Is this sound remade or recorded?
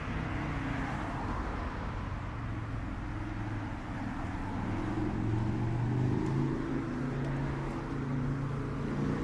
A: recorded